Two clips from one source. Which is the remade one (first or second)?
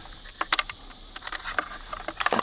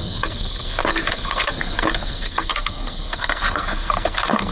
second